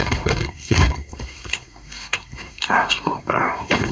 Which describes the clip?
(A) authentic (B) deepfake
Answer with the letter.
B